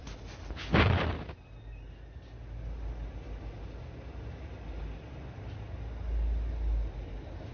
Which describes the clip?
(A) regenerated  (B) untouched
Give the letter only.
B